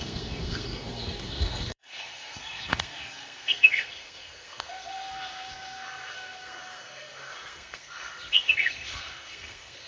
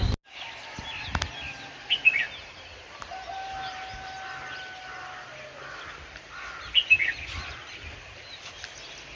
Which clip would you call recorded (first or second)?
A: second